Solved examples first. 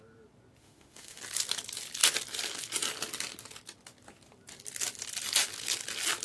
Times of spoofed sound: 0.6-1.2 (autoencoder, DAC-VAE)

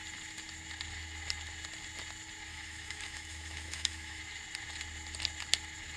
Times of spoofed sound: 2.5-4.2 (autoencoder, DAC-VAE)

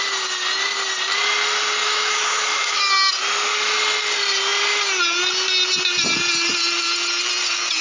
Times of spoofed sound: 1.8-2.8 (autoencoder, DAC-VAE)

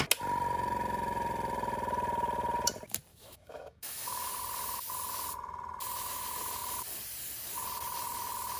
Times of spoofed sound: 3.1-4.3 (autoencoder, DAC-VAE)

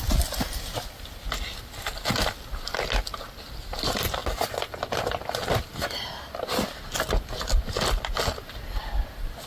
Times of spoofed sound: none

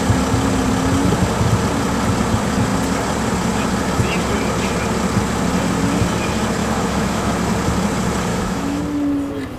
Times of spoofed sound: 6.6-7.3 (autoencoder, DAC-VAE); 8.3-8.8

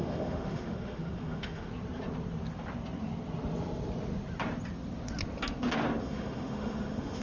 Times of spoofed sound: 0.0-1.7 (autoencoder, DAC-VAE); 6.0-7.2

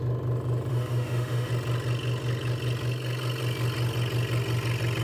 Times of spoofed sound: 0.7-1.5 (autoencoder, DAC-VAE)